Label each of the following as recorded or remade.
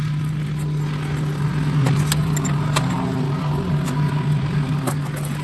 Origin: recorded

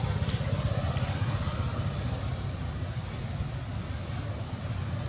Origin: recorded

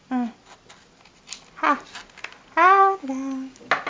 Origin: recorded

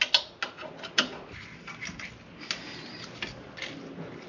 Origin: recorded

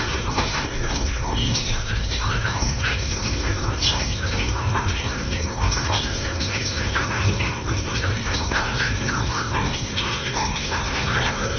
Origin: remade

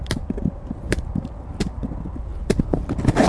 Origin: recorded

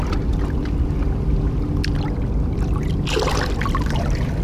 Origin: recorded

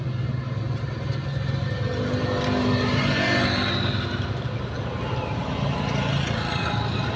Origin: recorded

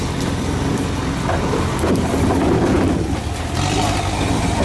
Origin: recorded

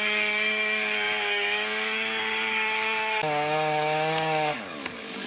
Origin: remade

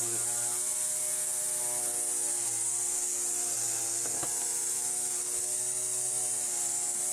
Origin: recorded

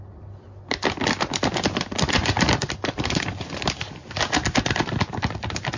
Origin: recorded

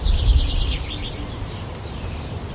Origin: recorded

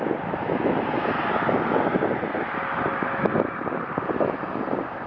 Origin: recorded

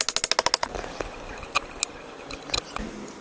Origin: recorded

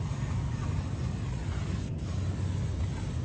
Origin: recorded